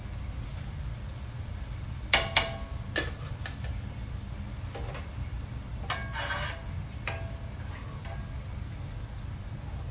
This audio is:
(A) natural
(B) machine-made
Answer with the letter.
A